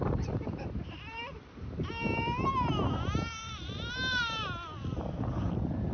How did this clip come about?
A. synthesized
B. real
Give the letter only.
A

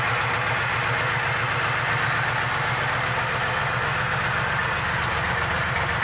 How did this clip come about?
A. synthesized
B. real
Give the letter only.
B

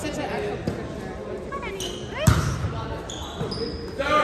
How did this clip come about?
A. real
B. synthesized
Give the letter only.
A